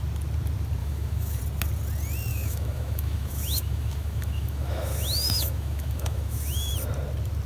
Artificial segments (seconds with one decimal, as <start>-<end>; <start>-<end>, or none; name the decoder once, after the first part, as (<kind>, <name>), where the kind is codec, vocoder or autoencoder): 0.8-1.4 (autoencoder, DAC-VAE); 2.3-6.7